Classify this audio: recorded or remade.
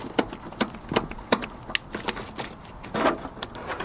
recorded